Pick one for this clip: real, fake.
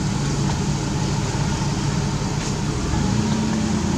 real